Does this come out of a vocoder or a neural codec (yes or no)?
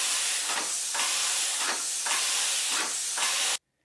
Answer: yes